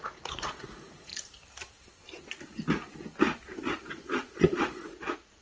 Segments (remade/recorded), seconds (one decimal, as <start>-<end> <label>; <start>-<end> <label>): 0.0-1.1 remade; 1.1-3.9 recorded; 3.9-5.4 remade